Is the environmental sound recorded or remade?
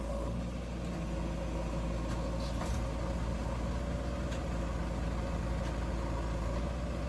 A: recorded